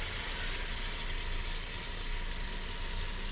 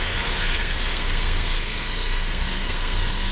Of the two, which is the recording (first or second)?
first